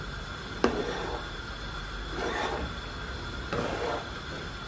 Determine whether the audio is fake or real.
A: real